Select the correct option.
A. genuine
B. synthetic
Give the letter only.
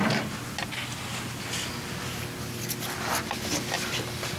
A